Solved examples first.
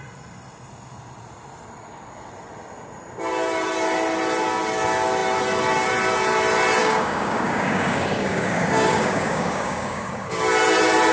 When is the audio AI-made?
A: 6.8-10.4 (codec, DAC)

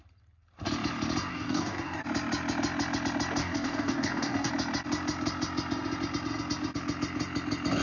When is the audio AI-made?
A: 1.3-2.0 (codec, DAC); 3.4-4.5